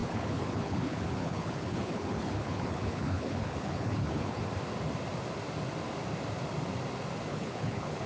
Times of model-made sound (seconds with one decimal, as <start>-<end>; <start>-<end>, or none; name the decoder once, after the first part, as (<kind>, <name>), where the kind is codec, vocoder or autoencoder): 0.0-4.4 (codec, HILCodec); 7.3-8.1